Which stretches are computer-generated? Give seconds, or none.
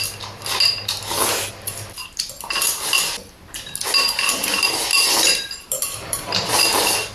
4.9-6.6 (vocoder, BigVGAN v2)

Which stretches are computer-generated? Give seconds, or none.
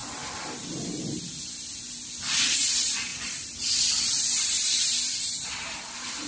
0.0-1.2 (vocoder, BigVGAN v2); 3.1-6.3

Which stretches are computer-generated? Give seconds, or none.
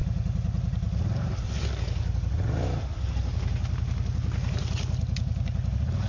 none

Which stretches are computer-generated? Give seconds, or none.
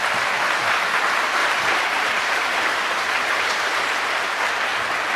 1.4-4.5 (vocoder, BigVGAN v2)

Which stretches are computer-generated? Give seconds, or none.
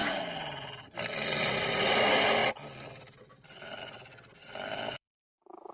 4.4-5.2 (vocoder, BigVGAN v2)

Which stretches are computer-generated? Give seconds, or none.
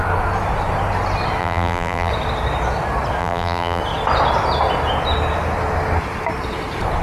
1.4-2.1 (vocoder, BigVGAN v2); 3.2-3.8